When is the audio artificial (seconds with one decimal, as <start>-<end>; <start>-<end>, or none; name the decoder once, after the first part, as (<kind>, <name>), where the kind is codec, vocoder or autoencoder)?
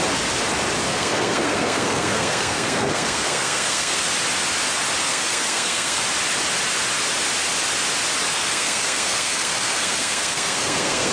0.9-4.1 (codec, SNAC); 5.0-6.0; 8.3-11.1